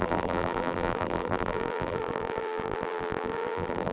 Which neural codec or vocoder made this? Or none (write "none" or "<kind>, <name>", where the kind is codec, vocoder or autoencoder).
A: vocoder, BigVGAN v2